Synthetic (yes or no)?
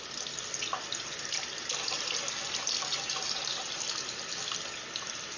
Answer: no